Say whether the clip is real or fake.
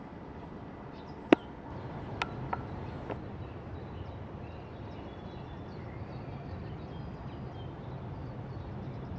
real